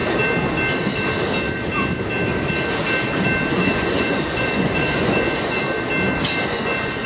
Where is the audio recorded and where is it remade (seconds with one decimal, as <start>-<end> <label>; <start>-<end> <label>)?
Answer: 0.0-3.5 recorded; 3.5-5.6 remade; 5.6-6.4 recorded; 6.4-7.1 remade